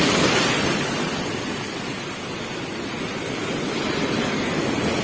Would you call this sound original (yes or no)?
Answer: yes